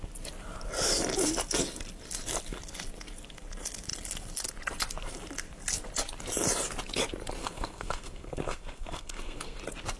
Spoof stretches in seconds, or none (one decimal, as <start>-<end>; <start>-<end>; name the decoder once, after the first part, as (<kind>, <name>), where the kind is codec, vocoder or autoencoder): 7.4-9.6 (codec, SNAC)